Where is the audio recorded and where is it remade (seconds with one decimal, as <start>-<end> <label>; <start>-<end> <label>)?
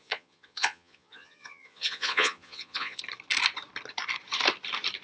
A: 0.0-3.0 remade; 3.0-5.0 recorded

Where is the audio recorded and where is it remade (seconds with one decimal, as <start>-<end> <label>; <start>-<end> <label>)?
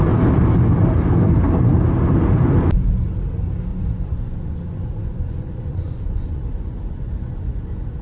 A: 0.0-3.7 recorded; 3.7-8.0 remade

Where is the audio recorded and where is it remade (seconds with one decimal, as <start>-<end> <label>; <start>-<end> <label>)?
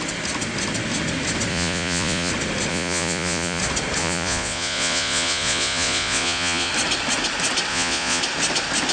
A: 0.0-1.5 recorded; 1.5-2.3 remade; 2.3-2.7 recorded; 2.7-3.6 remade; 3.6-4.0 recorded; 4.0-6.7 remade; 6.7-7.7 recorded; 7.7-8.2 remade; 8.2-8.9 recorded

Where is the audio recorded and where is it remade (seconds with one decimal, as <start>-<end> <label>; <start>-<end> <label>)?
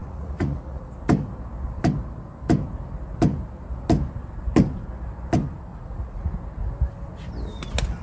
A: 0.0-0.9 remade; 0.9-5.7 recorded; 5.7-6.3 remade; 6.3-8.0 recorded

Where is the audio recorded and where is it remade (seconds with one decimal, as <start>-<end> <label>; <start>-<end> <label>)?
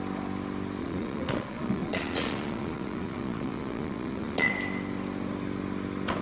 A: 0.0-0.8 recorded; 0.8-4.5 remade; 4.5-6.2 recorded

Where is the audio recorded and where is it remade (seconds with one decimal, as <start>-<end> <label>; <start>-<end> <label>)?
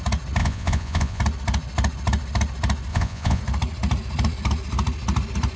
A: 0.0-0.4 recorded; 0.4-1.2 remade; 1.2-2.9 recorded; 2.9-3.4 remade; 3.4-5.6 recorded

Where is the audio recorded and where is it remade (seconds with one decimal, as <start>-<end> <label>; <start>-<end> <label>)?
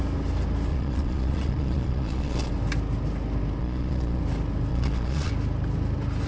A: 0.0-0.7 recorded; 0.7-2.5 remade; 2.5-3.6 recorded; 3.6-4.2 remade; 4.2-4.7 recorded; 4.7-5.3 remade; 5.3-6.3 recorded